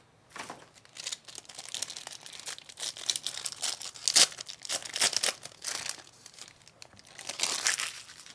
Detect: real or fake real